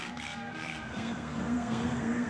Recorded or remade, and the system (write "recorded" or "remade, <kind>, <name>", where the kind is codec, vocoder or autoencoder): remade, codec, SNAC